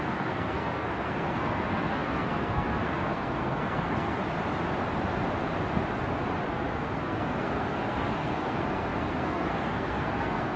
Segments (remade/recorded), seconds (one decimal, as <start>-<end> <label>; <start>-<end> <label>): 0.0-4.2 remade; 4.2-6.5 recorded; 6.5-10.6 remade